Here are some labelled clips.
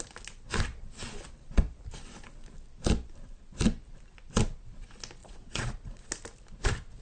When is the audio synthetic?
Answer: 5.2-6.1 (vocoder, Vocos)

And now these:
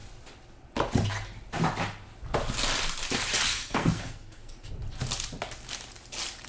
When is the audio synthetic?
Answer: 3.5-4.7 (codec, SNAC)

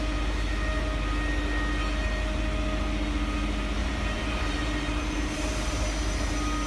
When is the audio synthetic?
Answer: 3.8-6.3 (vocoder, BigVGAN v2)